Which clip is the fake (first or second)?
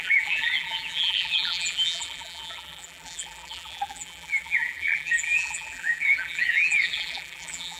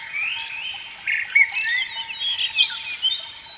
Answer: first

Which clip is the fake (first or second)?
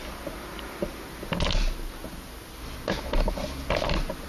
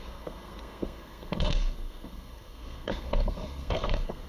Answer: second